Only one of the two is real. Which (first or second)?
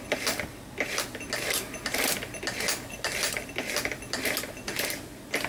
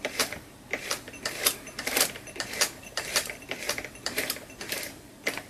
first